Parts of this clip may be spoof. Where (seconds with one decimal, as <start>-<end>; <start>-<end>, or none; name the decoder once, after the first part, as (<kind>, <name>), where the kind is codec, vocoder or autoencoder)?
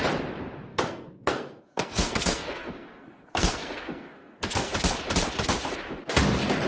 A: 0.7-4.7 (codec, SNAC)